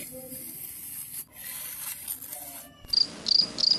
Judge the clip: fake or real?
real